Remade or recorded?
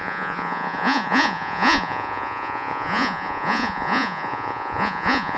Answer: remade